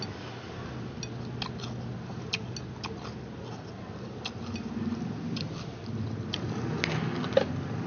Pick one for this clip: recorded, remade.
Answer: recorded